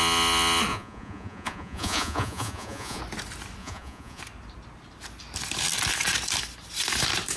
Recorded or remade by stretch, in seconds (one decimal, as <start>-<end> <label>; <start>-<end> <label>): 0.0-0.7 recorded; 0.7-3.0 remade; 3.0-3.6 recorded; 3.6-4.2 remade; 4.2-7.4 recorded